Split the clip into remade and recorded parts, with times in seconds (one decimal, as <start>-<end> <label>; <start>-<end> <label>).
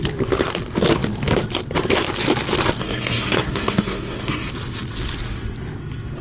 0.0-2.8 recorded; 2.8-4.5 remade; 4.5-6.2 recorded